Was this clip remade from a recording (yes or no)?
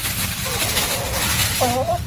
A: no